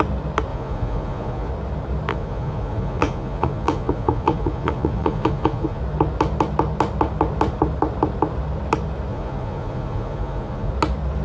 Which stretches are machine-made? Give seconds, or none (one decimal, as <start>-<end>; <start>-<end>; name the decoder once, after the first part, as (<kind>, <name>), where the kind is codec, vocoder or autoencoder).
0.5-1.5 (vocoder, Vocos); 2.1-5.8; 9.1-10.7